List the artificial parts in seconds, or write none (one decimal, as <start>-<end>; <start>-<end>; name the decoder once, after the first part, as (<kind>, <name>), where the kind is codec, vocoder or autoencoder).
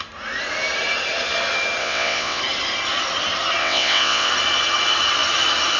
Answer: 1.8-2.4 (vocoder, WaveNeXt); 3.6-4.3